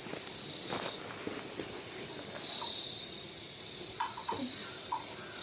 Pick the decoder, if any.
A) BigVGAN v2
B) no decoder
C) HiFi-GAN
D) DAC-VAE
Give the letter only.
B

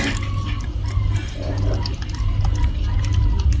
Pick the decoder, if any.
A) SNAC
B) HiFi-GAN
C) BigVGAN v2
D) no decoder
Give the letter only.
D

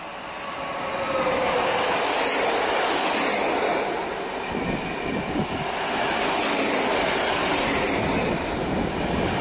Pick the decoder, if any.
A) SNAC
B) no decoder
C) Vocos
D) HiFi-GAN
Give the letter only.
B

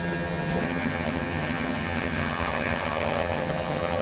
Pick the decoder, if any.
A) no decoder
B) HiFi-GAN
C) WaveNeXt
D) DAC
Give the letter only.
B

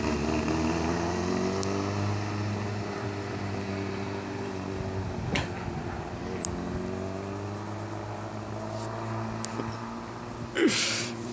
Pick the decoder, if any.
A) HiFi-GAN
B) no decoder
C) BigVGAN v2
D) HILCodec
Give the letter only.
B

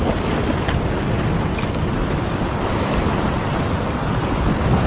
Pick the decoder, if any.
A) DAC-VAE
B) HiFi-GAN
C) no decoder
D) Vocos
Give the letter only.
C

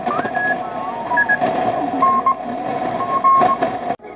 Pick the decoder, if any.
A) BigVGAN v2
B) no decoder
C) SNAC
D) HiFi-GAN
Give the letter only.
B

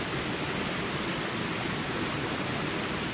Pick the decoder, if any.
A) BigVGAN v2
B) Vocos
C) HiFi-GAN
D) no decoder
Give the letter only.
D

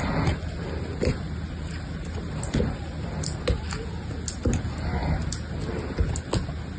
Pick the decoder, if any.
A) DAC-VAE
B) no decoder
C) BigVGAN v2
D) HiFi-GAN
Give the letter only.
B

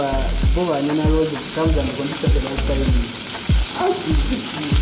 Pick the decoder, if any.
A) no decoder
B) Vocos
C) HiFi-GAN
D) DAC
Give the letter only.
A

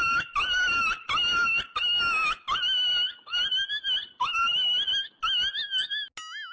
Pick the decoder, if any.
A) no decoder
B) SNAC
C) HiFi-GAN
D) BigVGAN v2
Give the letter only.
A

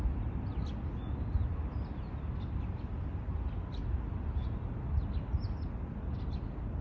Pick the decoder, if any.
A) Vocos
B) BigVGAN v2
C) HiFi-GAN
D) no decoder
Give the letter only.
D